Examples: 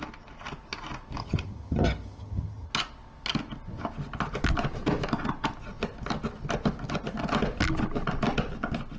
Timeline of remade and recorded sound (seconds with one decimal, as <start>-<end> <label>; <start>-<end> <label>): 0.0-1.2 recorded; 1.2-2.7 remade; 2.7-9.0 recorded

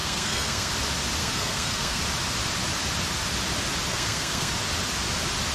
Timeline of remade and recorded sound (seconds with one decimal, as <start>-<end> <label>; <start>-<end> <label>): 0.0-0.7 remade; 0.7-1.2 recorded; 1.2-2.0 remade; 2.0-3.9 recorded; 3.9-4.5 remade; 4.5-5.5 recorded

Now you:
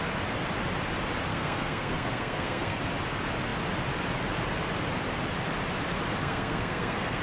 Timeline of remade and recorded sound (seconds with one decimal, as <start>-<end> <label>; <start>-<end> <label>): 0.0-1.3 recorded; 1.3-2.8 remade; 2.8-6.2 recorded; 6.2-7.2 remade

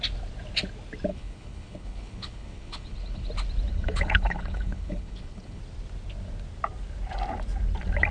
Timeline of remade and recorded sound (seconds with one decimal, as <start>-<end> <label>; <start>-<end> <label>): 0.0-1.1 recorded; 1.1-3.3 remade; 3.3-3.7 recorded; 3.7-5.6 remade; 5.6-8.1 recorded

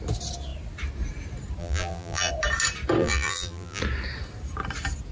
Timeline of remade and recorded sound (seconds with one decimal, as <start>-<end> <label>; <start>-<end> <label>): 0.0-1.6 recorded; 1.6-2.3 remade; 2.3-3.0 recorded; 3.0-3.8 remade; 3.8-5.1 recorded